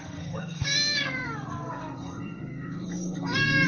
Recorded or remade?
remade